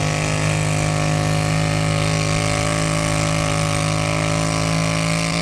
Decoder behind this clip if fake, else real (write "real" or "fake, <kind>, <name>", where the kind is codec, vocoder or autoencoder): real